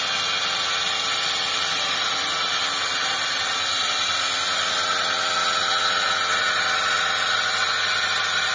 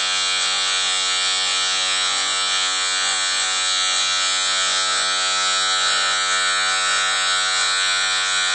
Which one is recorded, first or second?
first